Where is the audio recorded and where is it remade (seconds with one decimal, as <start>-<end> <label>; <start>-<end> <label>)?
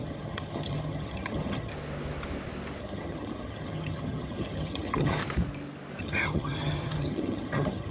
0.0-1.7 remade; 1.7-2.8 recorded; 2.8-5.2 remade; 5.2-6.0 recorded; 6.0-7.9 remade